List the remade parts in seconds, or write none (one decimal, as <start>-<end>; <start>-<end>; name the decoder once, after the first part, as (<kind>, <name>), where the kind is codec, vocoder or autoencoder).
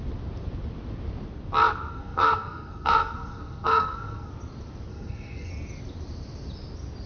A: 1.9-4.3 (codec, SNAC); 4.9-5.5